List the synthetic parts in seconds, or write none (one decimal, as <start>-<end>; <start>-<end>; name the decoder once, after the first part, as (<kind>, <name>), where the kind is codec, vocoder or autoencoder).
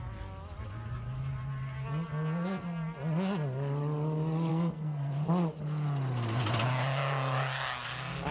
4.5-5.1 (codec, SNAC)